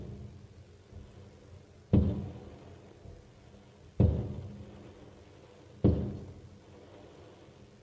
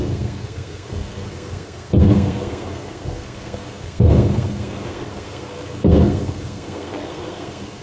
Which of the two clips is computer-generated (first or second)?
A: second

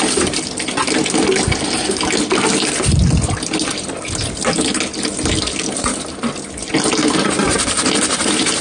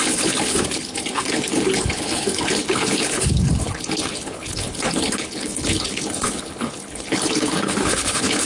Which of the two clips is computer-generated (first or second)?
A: second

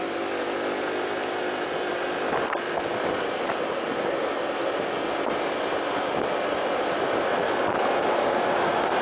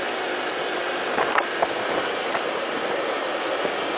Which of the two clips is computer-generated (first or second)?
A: second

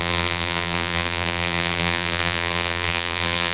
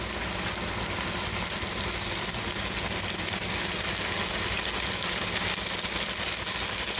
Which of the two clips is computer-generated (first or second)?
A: first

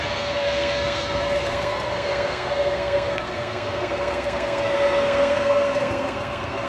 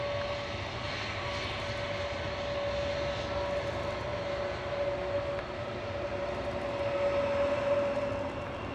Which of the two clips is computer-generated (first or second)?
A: first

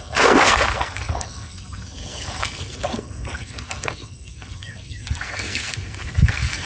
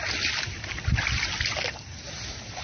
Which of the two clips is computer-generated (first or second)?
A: first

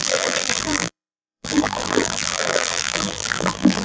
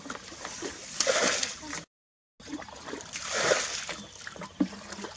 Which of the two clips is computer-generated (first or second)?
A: first